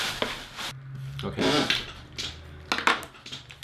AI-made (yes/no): no